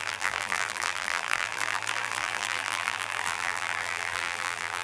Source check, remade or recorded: remade